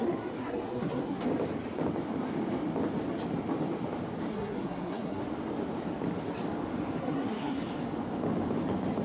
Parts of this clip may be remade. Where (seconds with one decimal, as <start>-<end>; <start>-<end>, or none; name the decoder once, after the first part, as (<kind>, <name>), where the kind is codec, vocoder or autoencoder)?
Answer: 0.4-1.2 (codec, SNAC); 4.3-5.2; 7.0-7.6